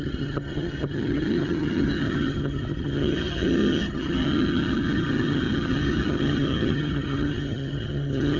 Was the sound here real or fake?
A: fake